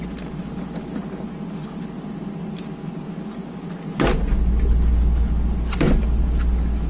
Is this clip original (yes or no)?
yes